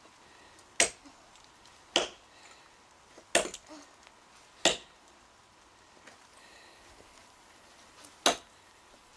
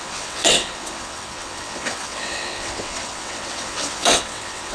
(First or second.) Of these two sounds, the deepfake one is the second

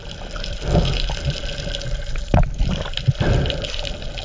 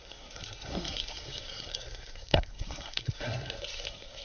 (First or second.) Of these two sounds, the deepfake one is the second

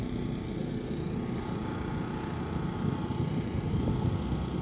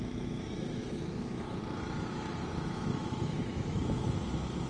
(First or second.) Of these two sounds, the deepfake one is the second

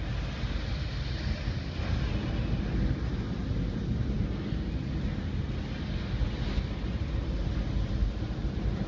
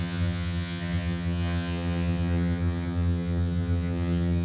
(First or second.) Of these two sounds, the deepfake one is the second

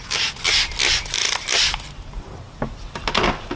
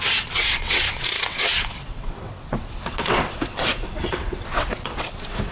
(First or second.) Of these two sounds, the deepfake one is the second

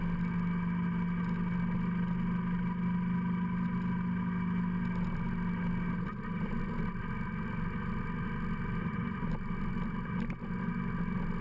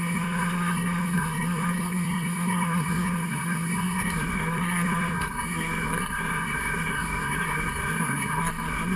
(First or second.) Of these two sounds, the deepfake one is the second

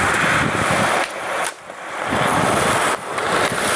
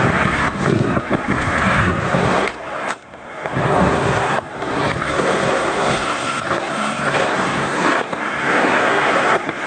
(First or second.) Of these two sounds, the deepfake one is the second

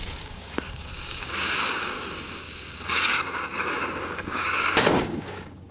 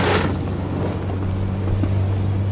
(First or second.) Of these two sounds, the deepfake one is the first